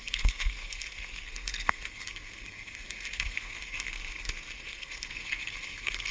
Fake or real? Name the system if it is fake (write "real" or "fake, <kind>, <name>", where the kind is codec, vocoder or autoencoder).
fake, codec, SNAC